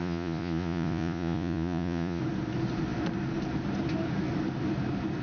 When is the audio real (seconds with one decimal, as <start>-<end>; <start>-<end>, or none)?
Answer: 2.2-5.2